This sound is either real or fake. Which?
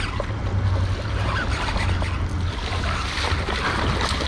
real